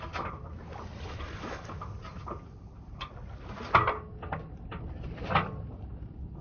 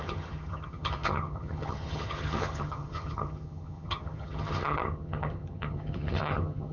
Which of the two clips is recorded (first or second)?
first